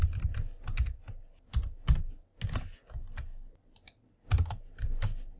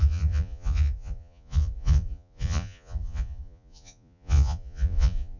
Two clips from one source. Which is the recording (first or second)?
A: first